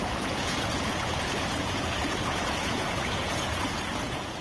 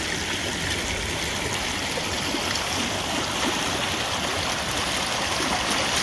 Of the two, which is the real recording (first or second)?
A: second